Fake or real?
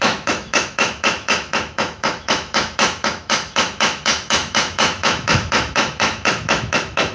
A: fake